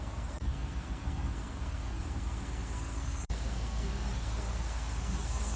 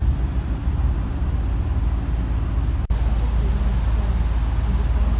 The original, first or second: second